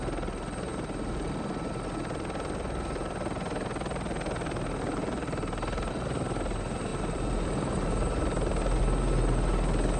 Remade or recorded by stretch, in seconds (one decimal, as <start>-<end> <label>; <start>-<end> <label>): 0.0-6.9 recorded; 6.9-8.8 remade; 8.8-10.0 recorded